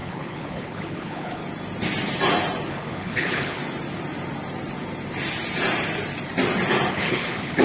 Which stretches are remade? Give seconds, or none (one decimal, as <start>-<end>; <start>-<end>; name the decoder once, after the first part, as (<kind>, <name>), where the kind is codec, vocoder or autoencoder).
0.0-1.4 (codec, HILCodec); 2.7-3.6; 6.9-7.6